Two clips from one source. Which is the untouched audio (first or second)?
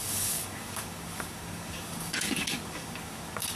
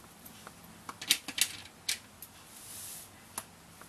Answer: second